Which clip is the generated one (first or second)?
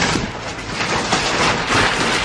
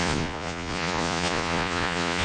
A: second